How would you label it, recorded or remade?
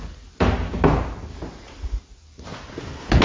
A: recorded